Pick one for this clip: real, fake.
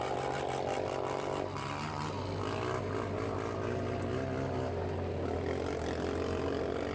real